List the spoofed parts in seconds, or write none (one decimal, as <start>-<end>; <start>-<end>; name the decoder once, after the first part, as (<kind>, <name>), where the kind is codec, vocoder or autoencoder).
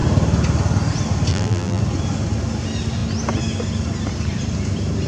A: 1.3-1.8 (vocoder, BigVGAN v2)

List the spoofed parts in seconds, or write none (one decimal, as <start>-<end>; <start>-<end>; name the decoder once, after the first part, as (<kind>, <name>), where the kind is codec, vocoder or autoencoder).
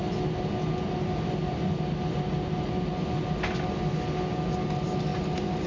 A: none